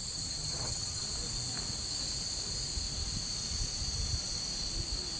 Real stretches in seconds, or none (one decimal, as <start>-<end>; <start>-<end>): 1.0-5.2